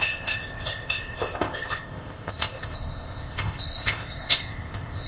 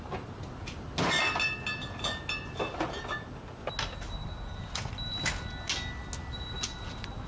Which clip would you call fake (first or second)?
first